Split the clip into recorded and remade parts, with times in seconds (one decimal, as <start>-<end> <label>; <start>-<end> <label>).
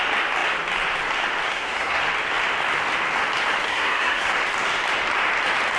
0.0-1.5 recorded; 1.5-2.0 remade; 2.0-3.7 recorded; 3.7-4.3 remade; 4.3-5.8 recorded